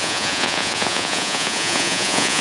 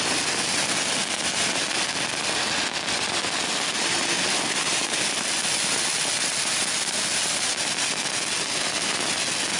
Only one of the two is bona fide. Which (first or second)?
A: second